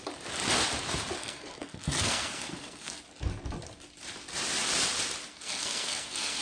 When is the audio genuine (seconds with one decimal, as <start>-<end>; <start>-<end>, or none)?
0.0-1.2; 3.0-5.3